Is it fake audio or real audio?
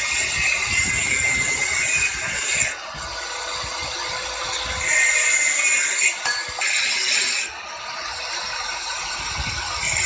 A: real